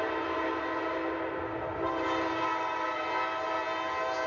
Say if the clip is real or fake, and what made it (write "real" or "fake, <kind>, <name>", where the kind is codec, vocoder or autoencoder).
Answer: real